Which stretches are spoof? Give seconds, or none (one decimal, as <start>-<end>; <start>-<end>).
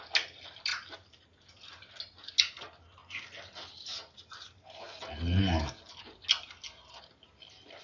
none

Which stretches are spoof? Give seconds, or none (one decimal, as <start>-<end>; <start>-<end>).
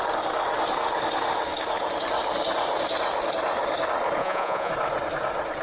4.2-4.7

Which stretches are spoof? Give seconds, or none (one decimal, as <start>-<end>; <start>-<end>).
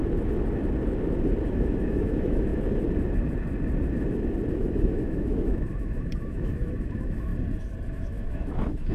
1.5-2.5; 4.5-7.3; 7.9-8.9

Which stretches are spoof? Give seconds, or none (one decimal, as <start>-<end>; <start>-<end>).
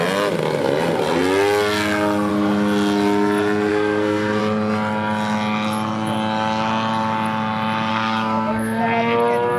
3.7-4.4; 7.9-8.8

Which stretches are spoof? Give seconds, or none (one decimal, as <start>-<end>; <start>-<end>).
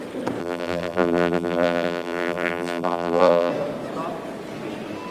0.4-3.5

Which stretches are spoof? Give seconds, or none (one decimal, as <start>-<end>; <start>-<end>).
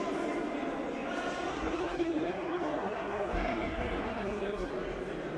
1.5-4.7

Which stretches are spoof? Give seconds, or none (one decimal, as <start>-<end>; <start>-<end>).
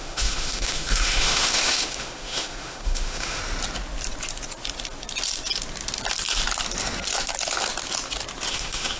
0.0-3.4; 8.5-9.0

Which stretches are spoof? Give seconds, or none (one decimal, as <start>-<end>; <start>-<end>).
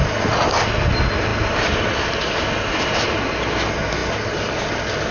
none